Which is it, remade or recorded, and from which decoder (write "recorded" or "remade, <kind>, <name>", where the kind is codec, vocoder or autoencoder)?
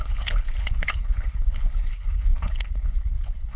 remade, codec, HILCodec